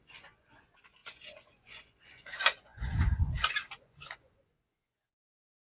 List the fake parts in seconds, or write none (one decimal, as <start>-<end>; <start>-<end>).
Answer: 0.0-5.7